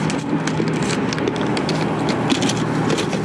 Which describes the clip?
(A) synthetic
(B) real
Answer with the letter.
B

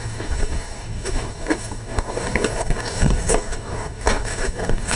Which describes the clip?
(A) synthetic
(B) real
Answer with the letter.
A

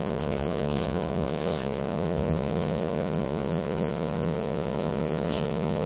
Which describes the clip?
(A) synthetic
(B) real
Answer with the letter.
A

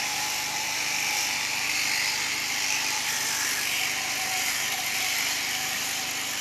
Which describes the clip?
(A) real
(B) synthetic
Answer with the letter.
A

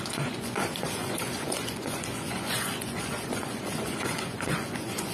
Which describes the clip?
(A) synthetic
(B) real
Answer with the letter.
A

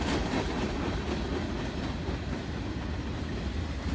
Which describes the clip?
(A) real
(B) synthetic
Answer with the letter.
A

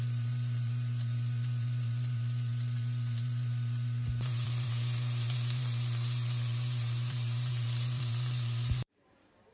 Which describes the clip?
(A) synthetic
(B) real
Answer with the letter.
A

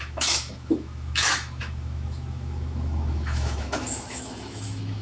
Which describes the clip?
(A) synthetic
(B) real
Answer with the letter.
A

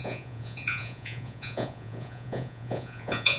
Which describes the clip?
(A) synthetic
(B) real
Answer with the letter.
A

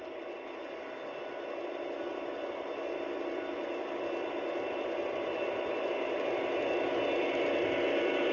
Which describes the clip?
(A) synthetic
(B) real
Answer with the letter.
B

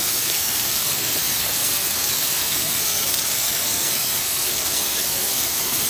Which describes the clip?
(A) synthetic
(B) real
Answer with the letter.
A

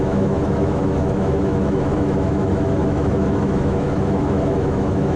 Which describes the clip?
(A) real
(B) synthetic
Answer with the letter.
B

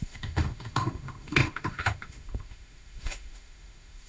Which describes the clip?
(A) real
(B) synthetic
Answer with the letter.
B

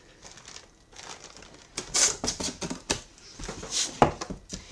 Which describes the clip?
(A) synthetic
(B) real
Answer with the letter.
B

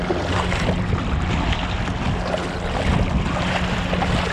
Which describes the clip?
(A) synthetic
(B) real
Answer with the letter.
B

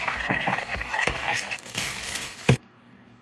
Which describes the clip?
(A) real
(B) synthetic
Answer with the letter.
B